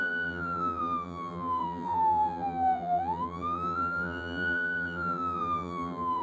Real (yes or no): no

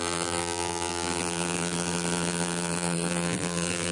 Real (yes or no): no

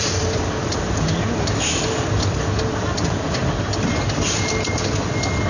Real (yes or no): no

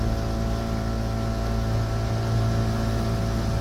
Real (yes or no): yes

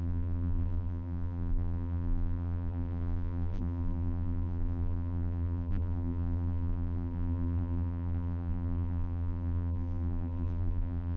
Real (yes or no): no